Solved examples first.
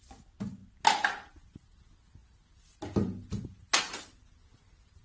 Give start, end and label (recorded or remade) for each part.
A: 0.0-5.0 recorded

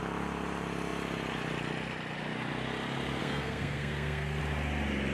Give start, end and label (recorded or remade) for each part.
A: 0.0-3.2 recorded; 3.2-4.4 remade; 4.4-5.1 recorded